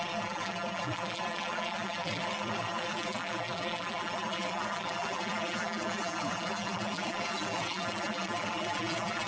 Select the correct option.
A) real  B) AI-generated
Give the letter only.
B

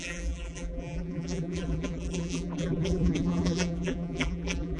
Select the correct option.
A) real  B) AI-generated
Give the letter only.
B